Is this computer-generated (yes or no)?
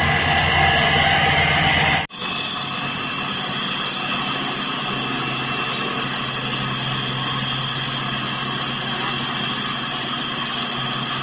no